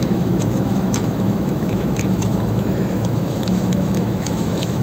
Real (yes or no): no